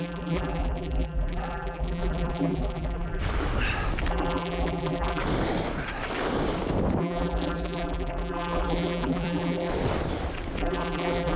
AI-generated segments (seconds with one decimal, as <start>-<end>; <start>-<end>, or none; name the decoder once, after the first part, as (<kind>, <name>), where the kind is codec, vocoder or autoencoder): 0.0-3.2 (vocoder, BigVGAN v2); 4.1-5.2; 7.0-9.7; 10.6-11.4